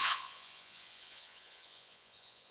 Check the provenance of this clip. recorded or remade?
remade